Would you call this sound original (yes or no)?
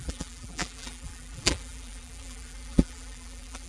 no